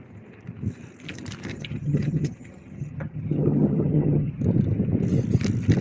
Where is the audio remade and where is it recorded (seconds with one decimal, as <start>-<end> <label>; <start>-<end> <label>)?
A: 0.0-1.5 recorded; 1.5-4.4 remade; 4.4-5.8 recorded